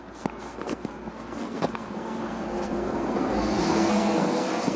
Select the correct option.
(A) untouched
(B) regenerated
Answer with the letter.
B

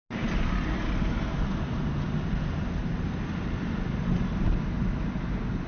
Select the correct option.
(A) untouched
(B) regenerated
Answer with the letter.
A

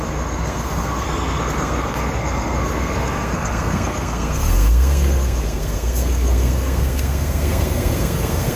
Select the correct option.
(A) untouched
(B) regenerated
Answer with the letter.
B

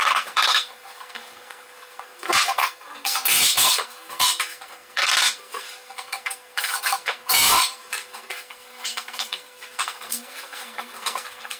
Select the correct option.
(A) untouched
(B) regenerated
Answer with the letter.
B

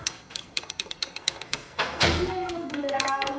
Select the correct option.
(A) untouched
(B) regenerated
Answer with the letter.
B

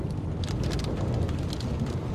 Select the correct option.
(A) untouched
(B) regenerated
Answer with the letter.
A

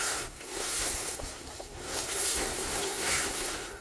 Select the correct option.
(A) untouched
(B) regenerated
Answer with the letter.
B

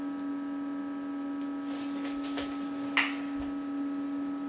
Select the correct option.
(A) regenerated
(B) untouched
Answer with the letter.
B